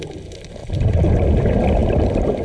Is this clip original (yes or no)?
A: yes